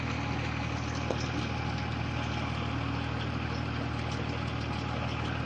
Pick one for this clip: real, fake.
real